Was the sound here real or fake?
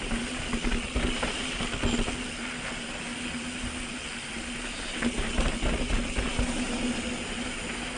real